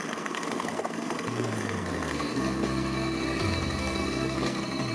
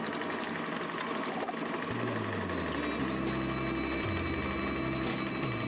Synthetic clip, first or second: first